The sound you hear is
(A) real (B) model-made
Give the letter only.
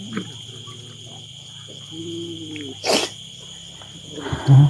A